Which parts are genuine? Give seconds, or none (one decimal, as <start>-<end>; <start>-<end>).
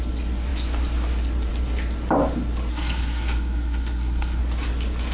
0.0-2.7; 4.4-5.1